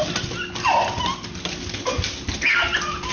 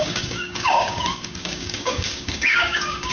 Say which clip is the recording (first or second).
first